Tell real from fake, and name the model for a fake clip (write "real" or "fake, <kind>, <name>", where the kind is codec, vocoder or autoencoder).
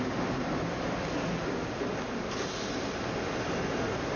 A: real